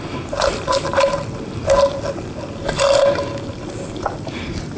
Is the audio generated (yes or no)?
no